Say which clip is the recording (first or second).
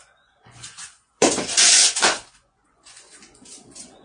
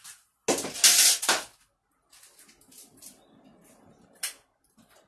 second